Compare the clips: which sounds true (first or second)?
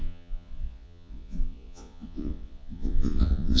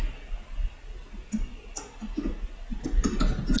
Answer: second